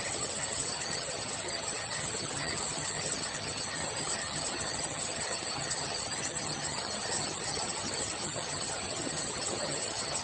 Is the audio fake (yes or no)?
yes